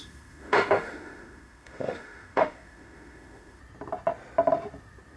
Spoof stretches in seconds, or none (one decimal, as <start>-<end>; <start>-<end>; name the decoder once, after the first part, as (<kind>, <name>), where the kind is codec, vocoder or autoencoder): 0.0-3.6 (autoencoder, DAC-VAE)